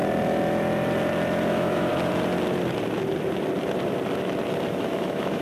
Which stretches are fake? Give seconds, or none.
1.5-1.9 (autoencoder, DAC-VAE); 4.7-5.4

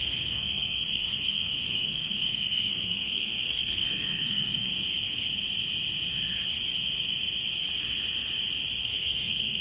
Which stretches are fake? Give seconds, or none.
0.0-4.7 (codec, SNAC); 8.8-9.6

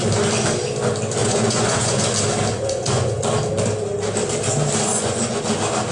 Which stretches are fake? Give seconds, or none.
1.2-2.0 (vocoder, Vocos); 2.5-3.2; 4.9-5.4

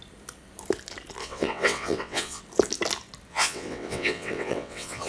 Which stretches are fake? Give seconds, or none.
1.2-2.4 (vocoder, WaveNeXt); 3.3-5.1